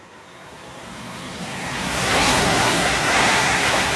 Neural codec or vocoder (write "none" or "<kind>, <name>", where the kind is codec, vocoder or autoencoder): codec, SNAC